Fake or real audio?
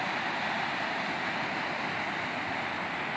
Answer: real